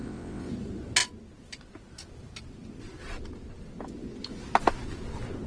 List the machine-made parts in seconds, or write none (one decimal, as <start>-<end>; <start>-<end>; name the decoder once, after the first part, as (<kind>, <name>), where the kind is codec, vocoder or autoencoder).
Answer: 0.0-0.5 (vocoder, WaveNeXt)